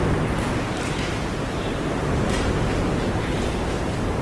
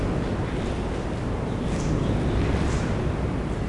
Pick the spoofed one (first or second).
first